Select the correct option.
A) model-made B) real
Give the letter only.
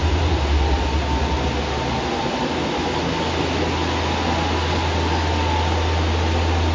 B